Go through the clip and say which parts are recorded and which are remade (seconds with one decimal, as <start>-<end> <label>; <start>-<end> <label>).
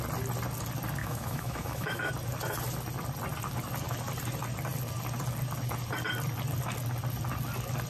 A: 0.0-1.0 recorded; 1.0-2.1 remade; 2.1-7.9 recorded